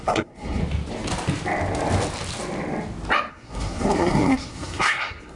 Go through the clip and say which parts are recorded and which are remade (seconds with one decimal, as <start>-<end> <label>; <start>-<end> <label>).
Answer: 0.0-0.6 remade; 0.6-3.3 recorded; 3.3-5.4 remade